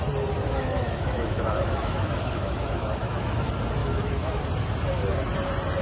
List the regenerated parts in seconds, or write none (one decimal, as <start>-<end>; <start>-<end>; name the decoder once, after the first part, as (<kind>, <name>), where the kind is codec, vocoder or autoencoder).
0.4-3.4 (autoencoder, DAC-VAE); 3.8-4.4